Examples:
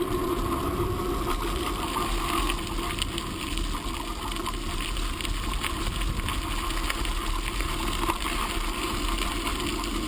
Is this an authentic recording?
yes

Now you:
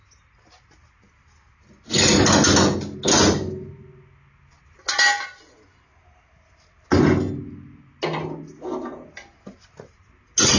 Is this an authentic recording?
yes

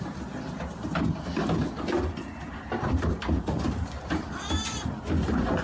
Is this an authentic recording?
no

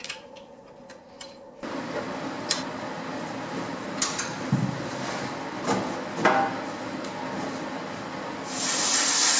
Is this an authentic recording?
yes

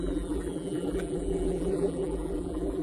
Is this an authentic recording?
no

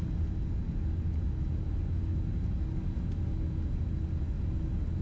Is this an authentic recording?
yes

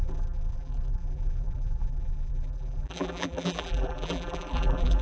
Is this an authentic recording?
no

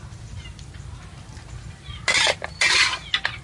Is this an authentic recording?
yes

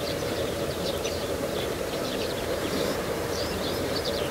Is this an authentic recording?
no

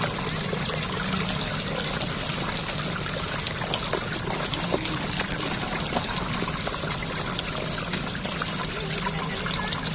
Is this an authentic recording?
yes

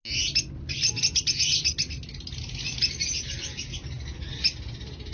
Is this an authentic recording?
yes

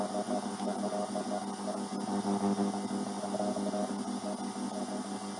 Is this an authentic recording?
yes